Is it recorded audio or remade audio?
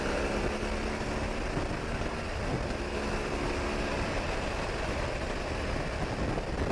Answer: recorded